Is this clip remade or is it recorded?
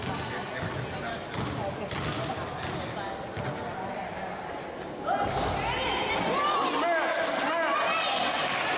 recorded